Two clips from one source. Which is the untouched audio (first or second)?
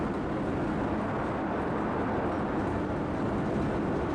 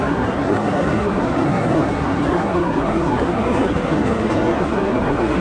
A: first